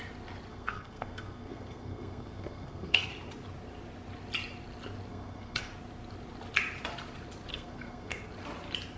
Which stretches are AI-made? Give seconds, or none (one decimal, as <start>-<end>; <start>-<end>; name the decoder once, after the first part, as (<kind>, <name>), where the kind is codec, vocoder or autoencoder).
0.5-3.1 (codec, SNAC); 5.1-5.7; 7.5-8.3